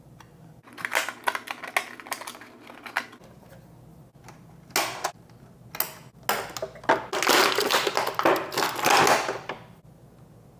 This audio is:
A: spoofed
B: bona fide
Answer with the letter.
B